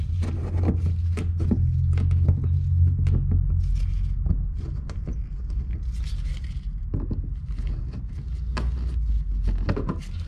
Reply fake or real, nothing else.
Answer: real